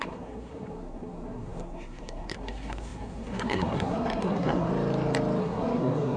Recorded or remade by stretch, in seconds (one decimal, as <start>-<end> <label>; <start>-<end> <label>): 0.0-4.7 remade; 4.7-5.4 recorded; 5.4-6.2 remade